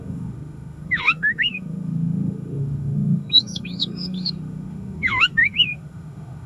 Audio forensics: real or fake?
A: fake